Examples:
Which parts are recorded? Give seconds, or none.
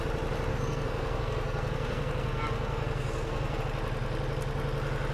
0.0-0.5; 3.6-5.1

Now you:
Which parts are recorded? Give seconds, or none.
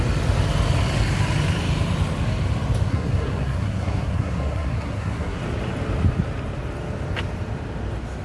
0.0-2.9; 5.4-8.2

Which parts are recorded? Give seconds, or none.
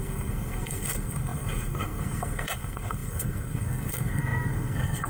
none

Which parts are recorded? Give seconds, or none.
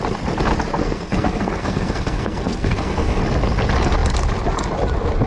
0.0-0.8; 3.2-5.3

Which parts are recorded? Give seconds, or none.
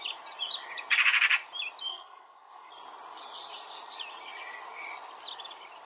0.0-1.9; 2.7-5.8